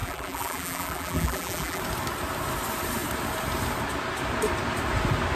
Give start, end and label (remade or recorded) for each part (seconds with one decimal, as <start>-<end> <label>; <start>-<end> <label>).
0.0-1.8 remade; 1.8-5.3 recorded